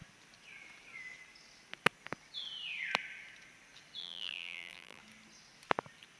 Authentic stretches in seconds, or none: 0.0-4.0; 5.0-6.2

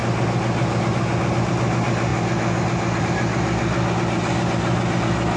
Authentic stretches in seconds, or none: 0.0-5.4

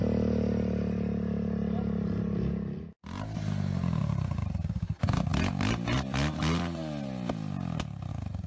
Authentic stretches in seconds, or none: 0.0-4.0; 5.3-8.1